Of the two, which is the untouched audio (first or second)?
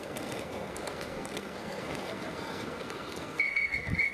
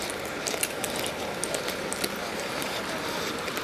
second